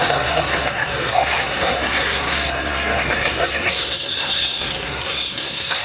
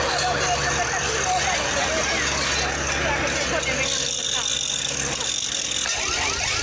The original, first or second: second